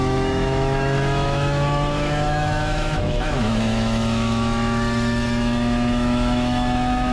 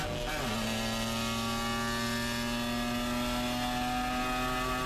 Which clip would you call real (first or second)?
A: second